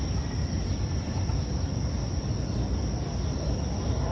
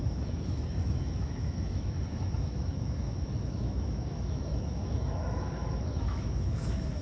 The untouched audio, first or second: first